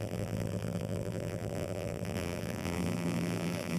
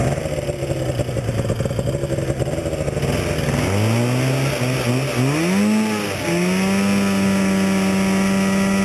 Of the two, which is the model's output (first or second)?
first